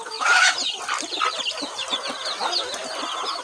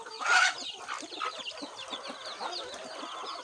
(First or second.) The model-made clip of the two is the second